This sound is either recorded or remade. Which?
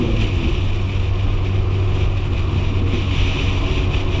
recorded